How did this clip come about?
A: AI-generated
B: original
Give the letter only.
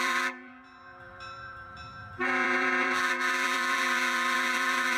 A